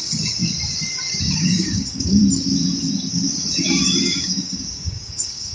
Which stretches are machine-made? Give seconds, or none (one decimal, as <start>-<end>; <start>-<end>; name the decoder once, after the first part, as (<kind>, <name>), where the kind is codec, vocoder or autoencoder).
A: 0.0-0.4 (codec, DAC); 1.2-2.2; 3.1-5.5